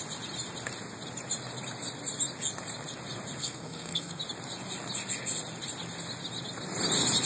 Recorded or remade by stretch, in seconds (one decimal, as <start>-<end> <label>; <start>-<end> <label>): 0.0-3.4 recorded; 3.4-4.2 remade; 4.2-7.3 recorded